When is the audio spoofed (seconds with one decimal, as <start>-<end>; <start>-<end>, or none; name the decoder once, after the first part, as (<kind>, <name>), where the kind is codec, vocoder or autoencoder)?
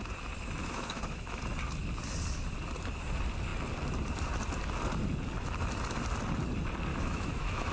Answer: 0.6-1.4 (autoencoder, DAC-VAE); 6.9-7.7